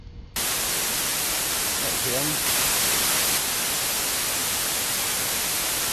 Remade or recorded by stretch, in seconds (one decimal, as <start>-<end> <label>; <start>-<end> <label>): 0.0-1.1 recorded; 1.1-1.7 remade; 1.7-4.4 recorded; 4.4-5.2 remade; 5.2-5.9 recorded